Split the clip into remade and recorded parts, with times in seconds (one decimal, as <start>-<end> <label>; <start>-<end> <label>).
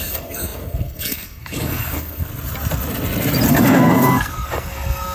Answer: 0.0-2.3 remade; 2.3-3.5 recorded; 3.5-5.1 remade